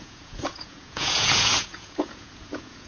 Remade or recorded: remade